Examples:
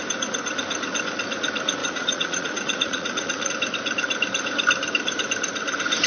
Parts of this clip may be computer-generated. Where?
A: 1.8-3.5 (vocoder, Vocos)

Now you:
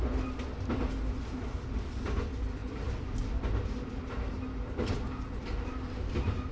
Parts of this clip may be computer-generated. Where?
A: none

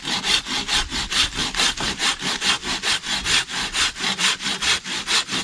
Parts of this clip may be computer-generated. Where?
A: none

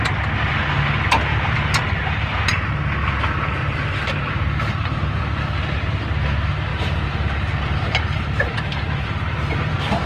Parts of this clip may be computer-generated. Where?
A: 1.3-2.0 (vocoder, BigVGAN v2); 3.6-5.3; 6.7-9.7

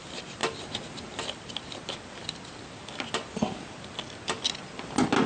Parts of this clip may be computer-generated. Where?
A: none

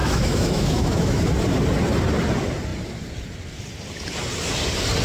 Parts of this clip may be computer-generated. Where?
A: 0.0-1.2 (autoencoder, DAC-VAE)

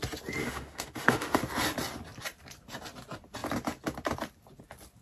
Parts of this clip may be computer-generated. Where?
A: 0.4-1.4 (autoencoder, DAC-VAE)